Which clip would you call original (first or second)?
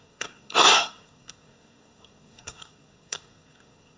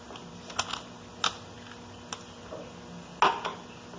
second